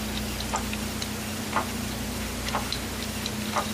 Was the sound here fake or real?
real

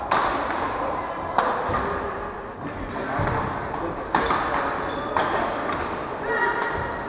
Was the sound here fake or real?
real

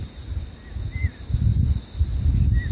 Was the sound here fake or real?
real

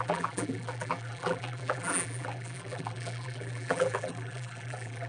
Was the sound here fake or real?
fake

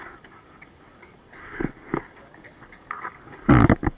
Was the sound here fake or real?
fake